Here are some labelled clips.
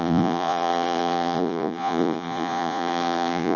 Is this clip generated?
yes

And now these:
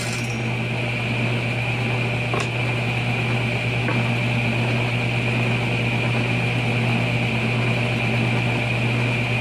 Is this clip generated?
no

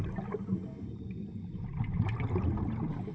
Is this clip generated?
no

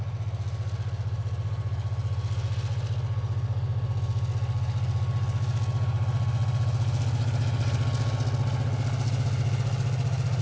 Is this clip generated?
no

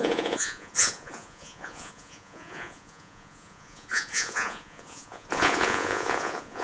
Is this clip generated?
yes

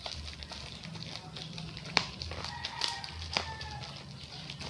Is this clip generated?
no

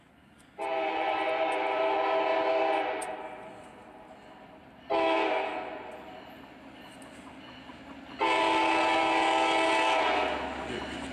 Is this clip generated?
no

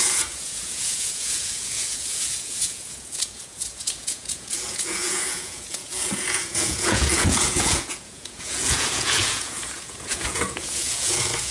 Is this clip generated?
yes